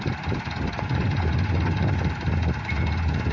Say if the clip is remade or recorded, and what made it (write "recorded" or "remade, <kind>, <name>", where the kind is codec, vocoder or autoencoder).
recorded